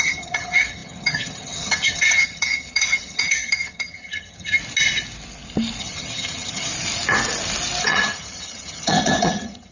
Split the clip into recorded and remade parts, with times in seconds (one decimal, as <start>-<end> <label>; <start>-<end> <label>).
0.0-4.6 remade; 4.6-5.8 recorded; 5.8-6.7 remade; 6.7-7.8 recorded; 7.8-9.7 remade